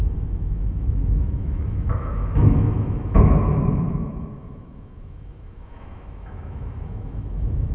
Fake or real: fake